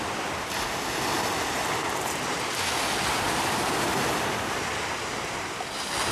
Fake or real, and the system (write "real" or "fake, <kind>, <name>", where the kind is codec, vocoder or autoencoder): real